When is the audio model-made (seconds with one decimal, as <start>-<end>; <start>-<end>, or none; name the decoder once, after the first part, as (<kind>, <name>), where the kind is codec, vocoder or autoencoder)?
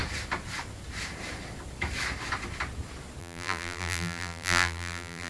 3.2-5.3 (vocoder, BigVGAN v2)